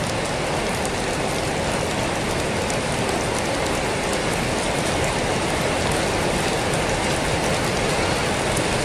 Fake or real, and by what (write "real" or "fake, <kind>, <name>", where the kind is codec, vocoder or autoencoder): real